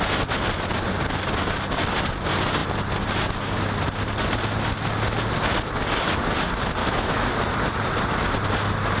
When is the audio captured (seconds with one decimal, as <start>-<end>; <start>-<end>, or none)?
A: 0.0-6.8; 7.3-9.0